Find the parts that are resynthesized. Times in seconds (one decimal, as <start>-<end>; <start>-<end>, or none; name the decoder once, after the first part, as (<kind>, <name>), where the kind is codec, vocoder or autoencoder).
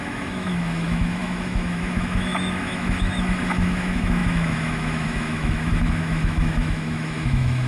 0.0-7.7 (autoencoder, DAC-VAE)